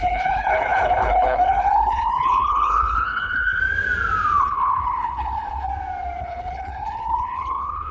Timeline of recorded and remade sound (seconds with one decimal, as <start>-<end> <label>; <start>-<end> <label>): 0.0-3.6 remade; 3.6-4.4 recorded; 4.4-5.7 remade; 5.7-6.2 recorded; 6.2-7.9 remade